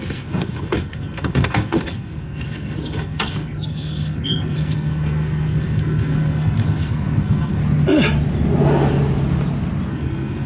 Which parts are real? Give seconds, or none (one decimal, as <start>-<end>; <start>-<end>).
7.6-9.9